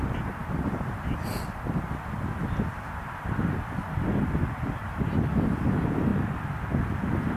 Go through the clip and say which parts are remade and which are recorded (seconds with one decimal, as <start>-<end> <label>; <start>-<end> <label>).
0.0-0.4 recorded; 0.4-3.4 remade; 3.4-7.4 recorded

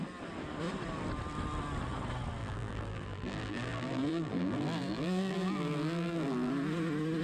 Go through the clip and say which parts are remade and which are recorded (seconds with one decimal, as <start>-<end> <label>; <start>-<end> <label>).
0.0-2.4 recorded; 2.4-6.5 remade; 6.5-7.2 recorded

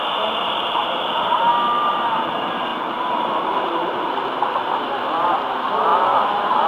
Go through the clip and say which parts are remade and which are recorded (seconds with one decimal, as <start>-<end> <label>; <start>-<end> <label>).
0.0-2.7 recorded; 2.7-3.7 remade; 3.7-5.9 recorded; 5.9-6.7 remade

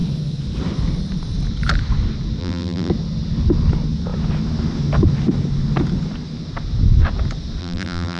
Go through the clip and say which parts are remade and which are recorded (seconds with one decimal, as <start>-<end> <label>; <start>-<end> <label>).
0.0-2.4 recorded; 2.4-2.9 remade; 2.9-7.6 recorded; 7.6-8.2 remade

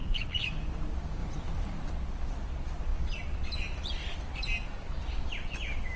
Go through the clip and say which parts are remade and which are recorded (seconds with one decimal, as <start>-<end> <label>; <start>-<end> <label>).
0.0-0.5 remade; 0.5-1.2 recorded; 1.2-1.9 remade; 1.9-6.0 recorded

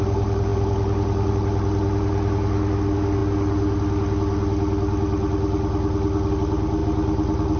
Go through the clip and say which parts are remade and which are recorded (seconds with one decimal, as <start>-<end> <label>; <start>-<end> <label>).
0.0-7.6 recorded